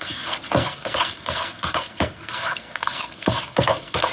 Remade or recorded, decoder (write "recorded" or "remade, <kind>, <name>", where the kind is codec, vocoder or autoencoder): remade, codec, SNAC